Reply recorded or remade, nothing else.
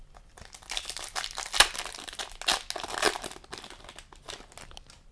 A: recorded